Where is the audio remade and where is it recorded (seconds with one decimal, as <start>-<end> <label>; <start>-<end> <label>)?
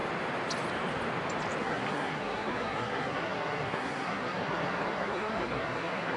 0.0-1.6 recorded; 1.6-6.2 remade